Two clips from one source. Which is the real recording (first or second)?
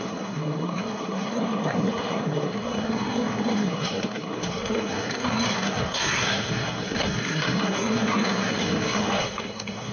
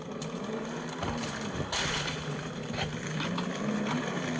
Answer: second